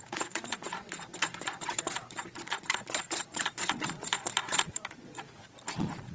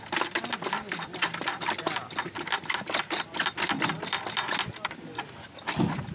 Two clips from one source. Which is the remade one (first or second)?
first